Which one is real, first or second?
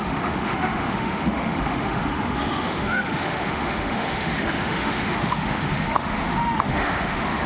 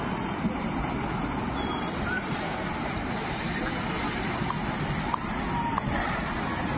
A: second